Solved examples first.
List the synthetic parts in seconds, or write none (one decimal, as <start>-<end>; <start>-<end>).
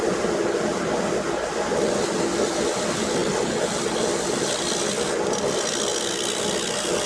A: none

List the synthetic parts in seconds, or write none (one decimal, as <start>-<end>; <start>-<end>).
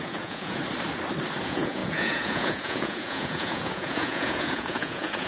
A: 0.0-0.6; 1.4-5.3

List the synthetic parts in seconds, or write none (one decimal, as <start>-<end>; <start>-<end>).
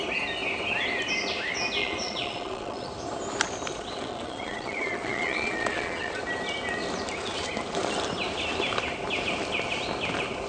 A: 1.8-2.9; 3.7-6.2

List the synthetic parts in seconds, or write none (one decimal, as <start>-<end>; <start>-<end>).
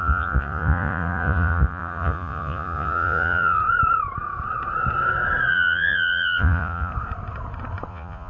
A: 0.0-3.6; 5.5-6.9; 7.9-8.3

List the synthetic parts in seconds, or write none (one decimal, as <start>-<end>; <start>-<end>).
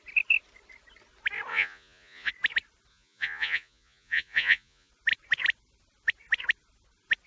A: 1.5-2.3; 2.9-4.9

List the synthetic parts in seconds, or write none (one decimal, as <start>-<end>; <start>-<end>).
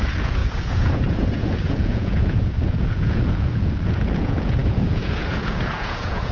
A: 0.0-6.3